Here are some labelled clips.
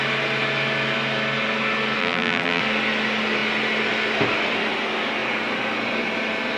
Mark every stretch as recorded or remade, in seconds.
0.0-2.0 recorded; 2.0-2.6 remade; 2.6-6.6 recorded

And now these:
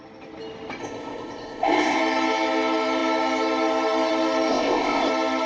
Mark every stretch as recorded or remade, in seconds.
0.0-0.8 recorded; 0.8-2.0 remade; 2.0-4.5 recorded; 4.5-5.1 remade; 5.1-5.5 recorded